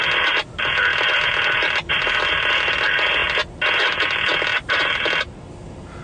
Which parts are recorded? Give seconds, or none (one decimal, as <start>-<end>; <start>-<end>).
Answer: 0.0-6.0